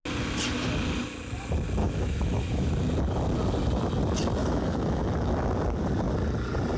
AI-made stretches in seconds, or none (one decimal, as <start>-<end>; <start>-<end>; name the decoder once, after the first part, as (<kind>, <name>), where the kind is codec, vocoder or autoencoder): 1.8-2.7 (autoencoder, DAC-VAE); 4.4-5.5